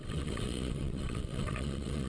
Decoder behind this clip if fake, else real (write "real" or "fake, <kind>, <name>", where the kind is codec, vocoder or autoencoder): fake, vocoder, WaveNeXt